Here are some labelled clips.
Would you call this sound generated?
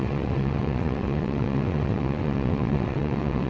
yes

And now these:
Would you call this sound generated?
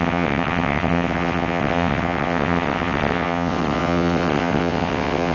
yes